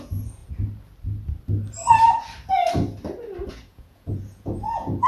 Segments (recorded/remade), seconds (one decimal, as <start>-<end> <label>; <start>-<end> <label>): 0.0-0.4 remade; 0.4-3.5 recorded; 3.5-5.1 remade